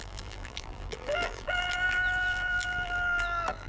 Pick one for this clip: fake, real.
fake